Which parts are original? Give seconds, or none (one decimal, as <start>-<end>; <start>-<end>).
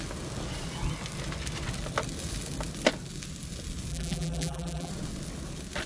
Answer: 0.0-3.9; 4.9-5.9